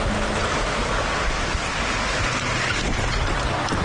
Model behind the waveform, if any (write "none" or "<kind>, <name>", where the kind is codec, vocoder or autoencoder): none